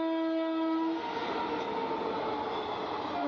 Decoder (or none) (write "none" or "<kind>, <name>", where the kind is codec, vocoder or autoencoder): none